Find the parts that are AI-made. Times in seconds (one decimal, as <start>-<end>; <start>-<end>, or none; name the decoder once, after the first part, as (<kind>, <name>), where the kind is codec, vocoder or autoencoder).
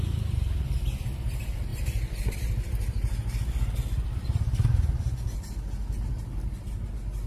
none